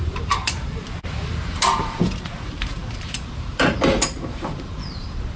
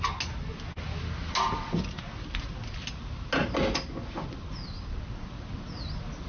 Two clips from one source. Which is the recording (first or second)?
second